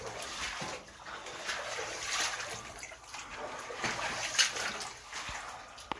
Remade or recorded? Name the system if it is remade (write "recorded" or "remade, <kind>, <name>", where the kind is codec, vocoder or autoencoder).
recorded